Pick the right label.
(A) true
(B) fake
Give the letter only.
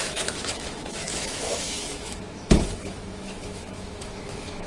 B